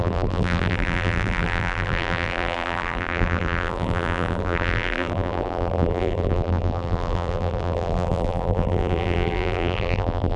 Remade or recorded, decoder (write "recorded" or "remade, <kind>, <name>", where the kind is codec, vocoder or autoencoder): remade, vocoder, BigVGAN v2